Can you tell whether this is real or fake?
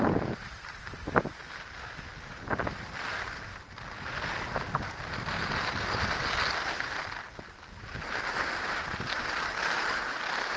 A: real